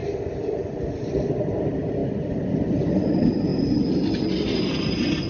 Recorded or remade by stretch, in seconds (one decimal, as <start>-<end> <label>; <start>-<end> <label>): 0.0-5.3 recorded